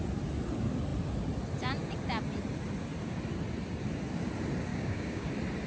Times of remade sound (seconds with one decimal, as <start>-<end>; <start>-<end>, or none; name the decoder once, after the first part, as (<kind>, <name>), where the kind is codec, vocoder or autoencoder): 4.7-5.3 (codec, DAC)